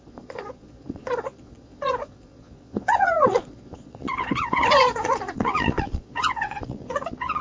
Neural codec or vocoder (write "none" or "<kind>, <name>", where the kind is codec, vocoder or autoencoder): vocoder, Vocos